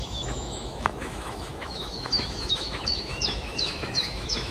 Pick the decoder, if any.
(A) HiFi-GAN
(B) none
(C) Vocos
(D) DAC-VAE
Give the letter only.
D